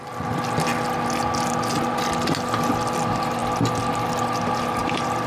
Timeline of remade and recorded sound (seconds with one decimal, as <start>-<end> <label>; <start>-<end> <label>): 0.0-0.7 remade; 0.7-2.4 recorded; 2.4-3.4 remade; 3.4-4.8 recorded; 4.8-5.3 remade